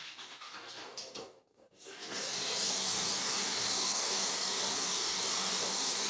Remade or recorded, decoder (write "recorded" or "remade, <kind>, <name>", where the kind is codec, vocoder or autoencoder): remade, codec, DAC